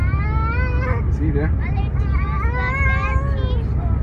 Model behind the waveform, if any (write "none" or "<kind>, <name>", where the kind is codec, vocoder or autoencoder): none